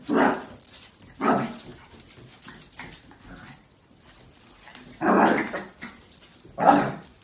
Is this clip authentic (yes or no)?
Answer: yes